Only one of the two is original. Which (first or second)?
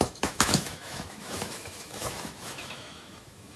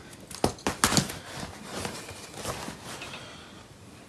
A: second